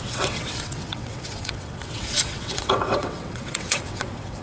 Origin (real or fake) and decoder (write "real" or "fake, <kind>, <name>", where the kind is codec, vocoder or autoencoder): fake, vocoder, WaveNeXt